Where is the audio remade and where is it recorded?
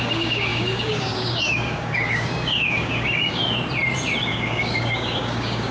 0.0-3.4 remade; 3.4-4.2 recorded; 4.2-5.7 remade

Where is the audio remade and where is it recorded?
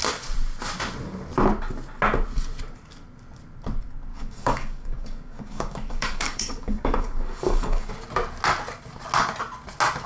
0.0-4.1 recorded; 4.1-7.9 remade; 7.9-10.1 recorded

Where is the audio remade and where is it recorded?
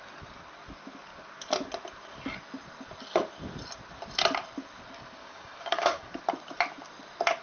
0.0-5.2 recorded; 5.2-6.2 remade; 6.2-7.4 recorded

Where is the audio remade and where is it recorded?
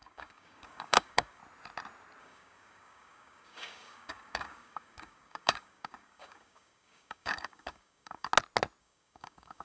0.0-1.4 remade; 1.4-2.2 recorded; 2.2-8.3 remade; 8.3-8.8 recorded; 8.8-9.6 remade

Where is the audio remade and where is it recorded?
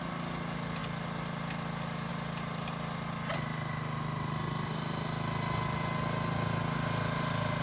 0.0-7.6 recorded